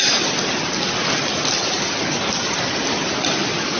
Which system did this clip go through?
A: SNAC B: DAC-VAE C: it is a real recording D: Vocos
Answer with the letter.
C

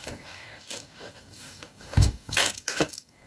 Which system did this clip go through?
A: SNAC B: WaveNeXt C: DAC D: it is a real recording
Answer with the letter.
C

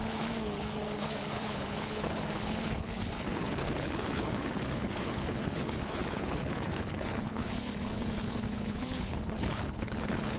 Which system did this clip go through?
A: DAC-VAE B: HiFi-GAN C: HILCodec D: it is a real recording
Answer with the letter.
C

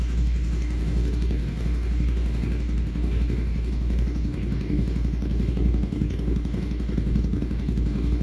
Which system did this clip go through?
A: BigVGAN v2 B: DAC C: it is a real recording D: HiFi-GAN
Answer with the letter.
B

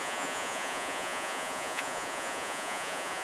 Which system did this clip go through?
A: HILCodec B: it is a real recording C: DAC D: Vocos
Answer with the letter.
D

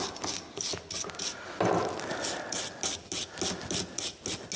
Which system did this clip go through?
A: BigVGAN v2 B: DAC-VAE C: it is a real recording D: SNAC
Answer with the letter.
C